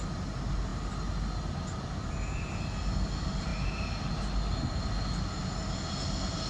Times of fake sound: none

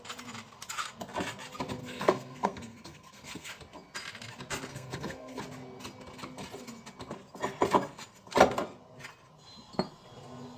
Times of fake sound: 1.8-3.5 (codec, SNAC); 4.7-5.4

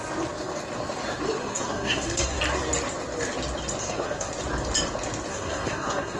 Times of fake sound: 1.4-2.4 (codec, SNAC); 3.8-4.3; 5.3-6.2

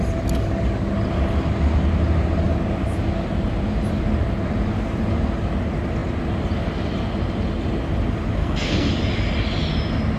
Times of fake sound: 8.4-8.9 (codec, SNAC)